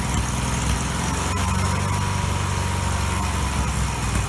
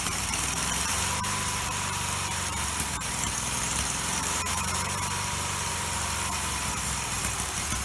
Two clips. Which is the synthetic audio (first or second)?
second